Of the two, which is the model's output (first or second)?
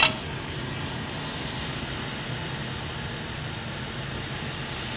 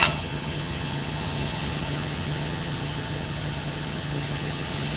second